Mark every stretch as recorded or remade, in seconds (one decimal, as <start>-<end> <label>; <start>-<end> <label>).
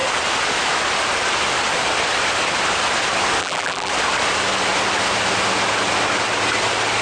0.0-3.4 recorded; 3.4-3.9 remade; 3.9-7.0 recorded